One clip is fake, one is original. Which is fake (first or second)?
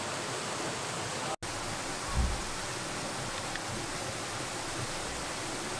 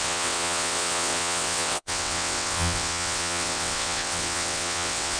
second